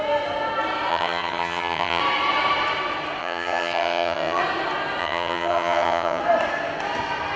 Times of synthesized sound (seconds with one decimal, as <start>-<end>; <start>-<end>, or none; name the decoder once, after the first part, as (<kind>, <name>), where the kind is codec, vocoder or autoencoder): 0.9-2.0 (vocoder, HiFi-GAN); 3.2-4.4; 5.0-6.2